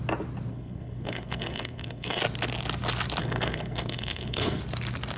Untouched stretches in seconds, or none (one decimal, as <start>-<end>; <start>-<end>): 0.0-0.5; 2.2-3.2; 4.6-5.2